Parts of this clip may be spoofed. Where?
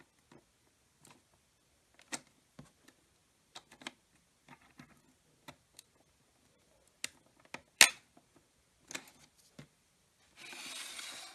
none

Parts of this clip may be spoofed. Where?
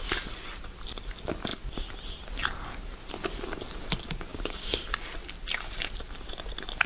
4.3-4.8 (codec, DAC)